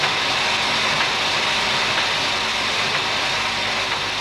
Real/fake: real